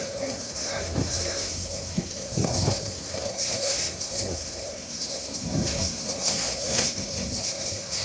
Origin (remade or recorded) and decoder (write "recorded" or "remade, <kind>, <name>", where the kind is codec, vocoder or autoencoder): remade, codec, SNAC